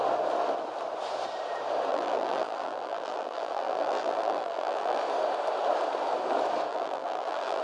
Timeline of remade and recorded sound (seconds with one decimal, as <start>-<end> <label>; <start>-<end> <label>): 0.0-1.9 recorded; 1.9-5.0 remade; 5.0-6.7 recorded; 6.7-7.6 remade

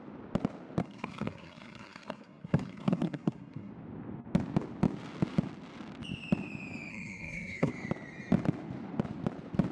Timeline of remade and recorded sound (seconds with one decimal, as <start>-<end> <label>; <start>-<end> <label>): 0.0-0.8 recorded; 0.8-3.7 remade; 3.7-6.9 recorded; 6.9-7.7 remade; 7.7-9.7 recorded

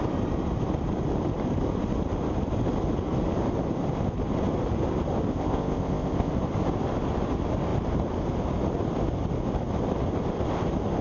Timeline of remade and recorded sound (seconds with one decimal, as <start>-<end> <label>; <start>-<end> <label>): 0.0-5.3 recorded; 5.3-6.3 remade; 6.3-11.0 recorded

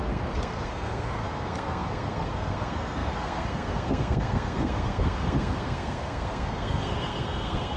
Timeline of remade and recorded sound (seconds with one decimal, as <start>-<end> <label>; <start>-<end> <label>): 0.0-7.8 remade

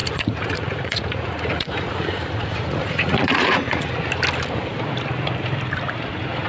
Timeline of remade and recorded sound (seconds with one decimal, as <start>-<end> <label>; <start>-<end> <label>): 0.0-3.9 remade; 3.9-6.5 recorded

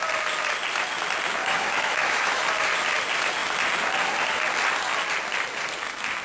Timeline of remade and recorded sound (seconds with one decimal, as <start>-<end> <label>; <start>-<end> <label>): 0.0-1.4 recorded; 1.4-2.4 remade; 2.4-6.2 recorded

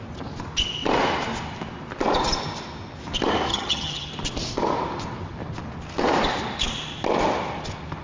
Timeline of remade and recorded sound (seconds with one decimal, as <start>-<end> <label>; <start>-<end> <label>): 0.0-3.5 recorded; 3.5-4.1 remade; 4.1-8.0 recorded

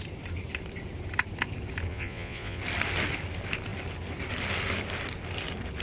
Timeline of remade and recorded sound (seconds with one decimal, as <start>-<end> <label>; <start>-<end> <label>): 0.0-1.9 recorded; 1.9-2.6 remade; 2.6-5.8 recorded